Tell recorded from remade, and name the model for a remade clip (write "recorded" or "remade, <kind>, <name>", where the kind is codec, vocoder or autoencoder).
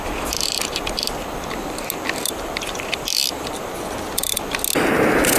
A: recorded